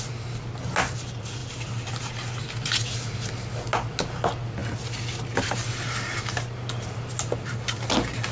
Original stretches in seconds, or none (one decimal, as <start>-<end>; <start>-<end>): 0.0-8.3